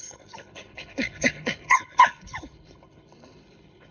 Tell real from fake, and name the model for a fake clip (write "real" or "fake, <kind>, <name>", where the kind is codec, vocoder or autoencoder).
fake, codec, HILCodec